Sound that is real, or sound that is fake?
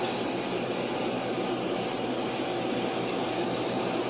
real